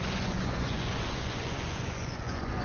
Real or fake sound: fake